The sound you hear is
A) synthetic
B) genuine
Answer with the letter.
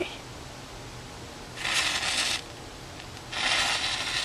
B